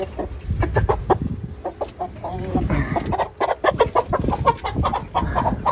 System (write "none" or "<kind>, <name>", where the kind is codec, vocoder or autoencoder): none